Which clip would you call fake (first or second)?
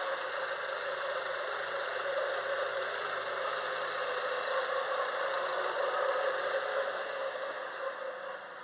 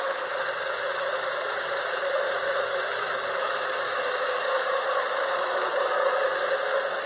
second